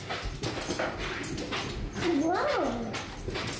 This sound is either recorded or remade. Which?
recorded